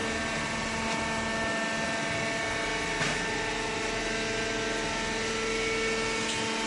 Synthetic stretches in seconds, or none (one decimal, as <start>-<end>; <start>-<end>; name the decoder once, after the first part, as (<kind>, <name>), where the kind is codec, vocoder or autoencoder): none